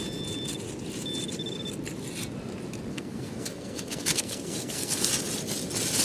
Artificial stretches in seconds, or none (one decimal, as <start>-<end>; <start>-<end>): 2.9-5.1